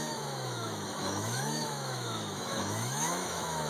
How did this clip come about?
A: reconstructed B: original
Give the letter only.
A